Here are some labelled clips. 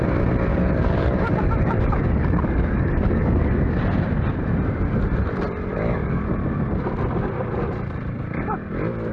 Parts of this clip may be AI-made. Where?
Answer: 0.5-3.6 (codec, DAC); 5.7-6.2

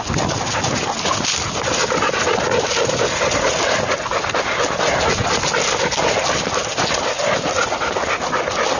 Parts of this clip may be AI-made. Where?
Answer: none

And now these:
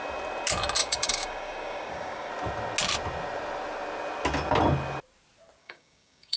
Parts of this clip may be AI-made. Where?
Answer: 0.8-2.3 (codec, DAC); 5.6-6.4